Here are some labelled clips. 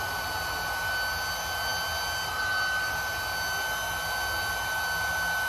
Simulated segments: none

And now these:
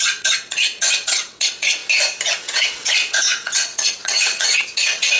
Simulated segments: 0.0-1.8 (vocoder, WaveNeXt); 2.4-5.2

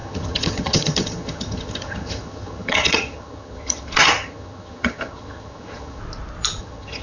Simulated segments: 0.0-6.0 (vocoder, HiFi-GAN); 6.6-7.0

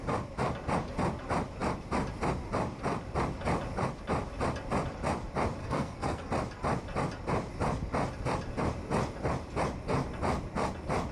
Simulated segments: 5.6-6.3 (codec, SNAC)